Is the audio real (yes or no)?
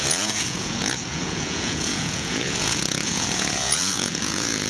no